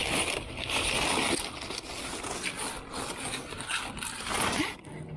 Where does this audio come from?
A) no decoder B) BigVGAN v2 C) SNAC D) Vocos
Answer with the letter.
A